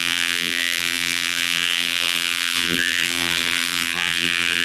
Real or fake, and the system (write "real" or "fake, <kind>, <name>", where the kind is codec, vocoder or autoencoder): fake, vocoder, BigVGAN v2